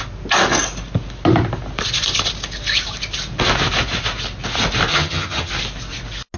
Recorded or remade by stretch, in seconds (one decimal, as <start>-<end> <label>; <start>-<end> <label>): 0.0-4.9 recorded; 4.9-5.5 remade; 5.5-6.4 recorded